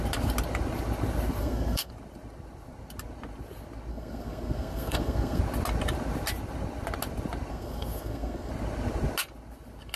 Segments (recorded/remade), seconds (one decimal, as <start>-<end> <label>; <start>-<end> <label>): 0.0-1.4 recorded; 1.4-1.9 remade; 1.9-3.9 recorded; 3.9-5.4 remade; 5.4-7.5 recorded; 7.5-8.5 remade; 8.5-10.0 recorded